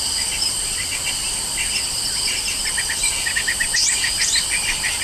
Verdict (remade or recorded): recorded